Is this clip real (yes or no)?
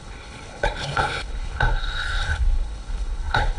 no